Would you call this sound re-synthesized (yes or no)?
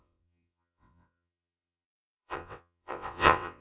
yes